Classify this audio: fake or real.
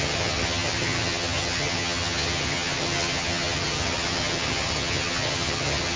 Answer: fake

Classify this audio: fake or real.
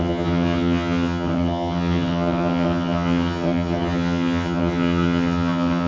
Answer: fake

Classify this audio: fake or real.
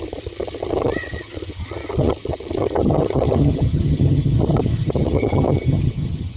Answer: fake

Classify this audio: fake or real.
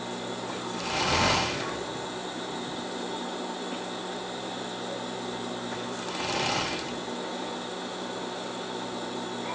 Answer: real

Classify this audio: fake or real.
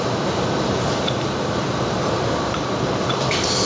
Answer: real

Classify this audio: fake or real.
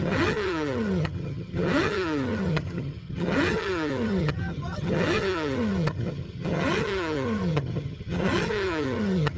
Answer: fake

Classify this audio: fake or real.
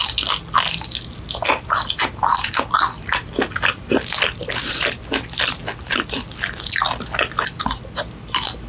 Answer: real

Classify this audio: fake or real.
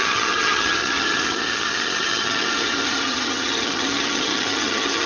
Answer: fake